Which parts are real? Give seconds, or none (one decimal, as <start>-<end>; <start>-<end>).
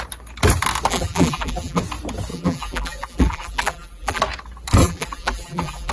0.0-0.9; 1.8-2.3; 4.2-4.8